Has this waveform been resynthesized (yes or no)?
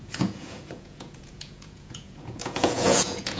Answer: yes